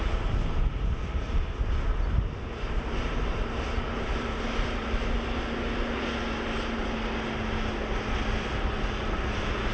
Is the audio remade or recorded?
recorded